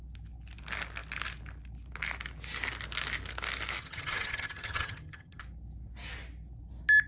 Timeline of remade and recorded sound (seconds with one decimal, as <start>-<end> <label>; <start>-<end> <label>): 0.0-3.8 recorded; 3.8-5.4 remade; 5.4-7.1 recorded